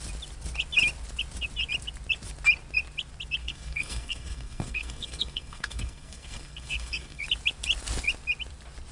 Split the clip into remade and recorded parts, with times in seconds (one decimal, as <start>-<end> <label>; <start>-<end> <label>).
0.0-3.4 recorded; 3.4-7.2 remade; 7.2-8.9 recorded